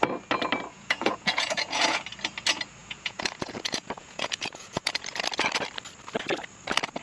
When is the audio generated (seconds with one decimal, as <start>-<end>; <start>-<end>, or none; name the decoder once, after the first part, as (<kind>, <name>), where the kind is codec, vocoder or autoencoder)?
0.7-2.0 (vocoder, Vocos); 2.8-5.0